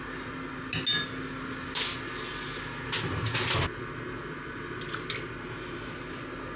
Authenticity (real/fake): real